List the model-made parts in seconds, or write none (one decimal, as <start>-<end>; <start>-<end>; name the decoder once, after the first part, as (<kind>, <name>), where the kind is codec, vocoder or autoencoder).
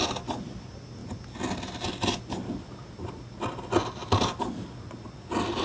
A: none